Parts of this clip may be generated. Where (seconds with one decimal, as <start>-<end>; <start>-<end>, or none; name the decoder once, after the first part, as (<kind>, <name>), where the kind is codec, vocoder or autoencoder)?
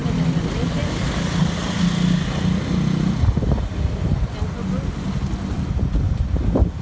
none